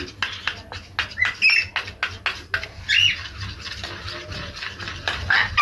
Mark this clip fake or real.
real